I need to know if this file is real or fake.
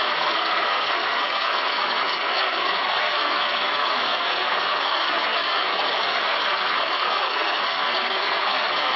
fake